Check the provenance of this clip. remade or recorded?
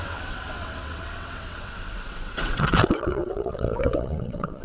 remade